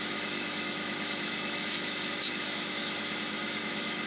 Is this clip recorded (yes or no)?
no